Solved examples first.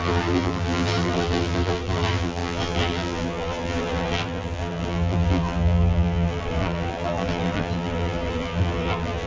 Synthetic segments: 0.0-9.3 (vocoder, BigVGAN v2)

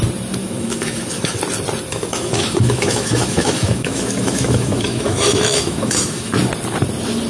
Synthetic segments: 0.4-1.4 (autoencoder, DAC-VAE); 1.9-6.3